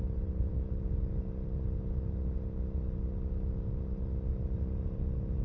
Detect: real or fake real